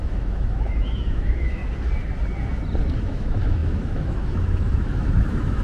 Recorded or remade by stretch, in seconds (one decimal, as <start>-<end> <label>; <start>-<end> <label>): 0.0-1.6 remade; 1.6-3.0 recorded; 3.0-5.6 remade